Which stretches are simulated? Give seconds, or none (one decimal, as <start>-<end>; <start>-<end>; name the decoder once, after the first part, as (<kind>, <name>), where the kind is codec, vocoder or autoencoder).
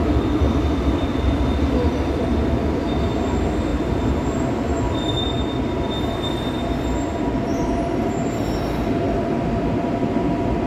3.7-4.5 (vocoder, BigVGAN v2)